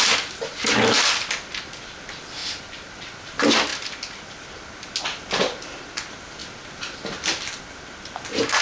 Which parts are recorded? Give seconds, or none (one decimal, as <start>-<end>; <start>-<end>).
0.0-8.6